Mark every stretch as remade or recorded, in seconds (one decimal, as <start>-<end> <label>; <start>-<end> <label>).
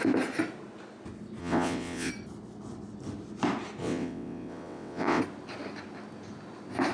0.0-1.4 recorded; 1.4-2.1 remade; 2.1-3.8 recorded; 3.8-5.2 remade; 5.2-6.9 recorded